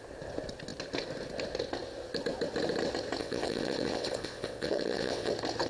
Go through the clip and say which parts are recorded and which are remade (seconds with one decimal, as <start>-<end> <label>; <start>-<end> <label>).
0.0-3.2 recorded; 3.2-5.3 remade; 5.3-5.7 recorded